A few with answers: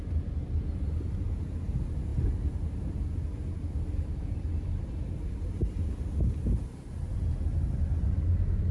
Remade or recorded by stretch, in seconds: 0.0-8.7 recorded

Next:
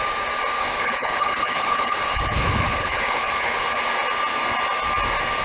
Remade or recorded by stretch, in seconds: 0.0-0.6 recorded; 0.6-3.8 remade; 3.8-5.4 recorded